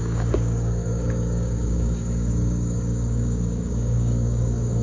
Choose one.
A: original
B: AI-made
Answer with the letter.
B